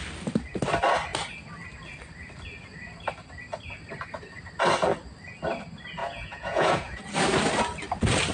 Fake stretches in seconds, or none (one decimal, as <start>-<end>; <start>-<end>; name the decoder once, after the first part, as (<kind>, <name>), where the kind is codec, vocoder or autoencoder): 6.0-7.0 (vocoder, Vocos)